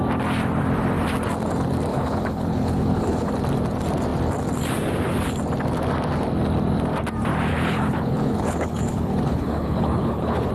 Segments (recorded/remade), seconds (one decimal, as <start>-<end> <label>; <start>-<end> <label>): 0.0-1.9 recorded; 1.9-3.3 remade; 3.3-7.5 recorded; 7.5-10.5 remade